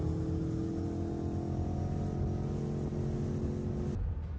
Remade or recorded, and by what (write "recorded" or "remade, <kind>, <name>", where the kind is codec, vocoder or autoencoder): recorded